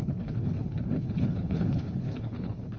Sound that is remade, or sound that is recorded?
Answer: remade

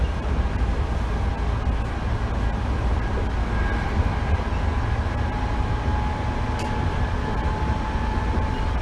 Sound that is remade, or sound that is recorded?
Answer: recorded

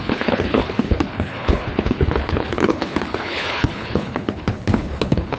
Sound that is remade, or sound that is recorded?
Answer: remade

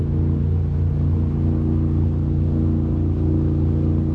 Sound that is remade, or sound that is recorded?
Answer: recorded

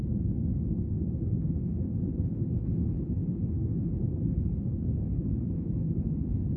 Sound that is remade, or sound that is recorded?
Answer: remade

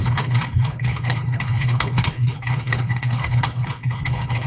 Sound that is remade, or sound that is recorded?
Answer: remade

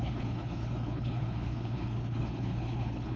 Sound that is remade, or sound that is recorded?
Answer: remade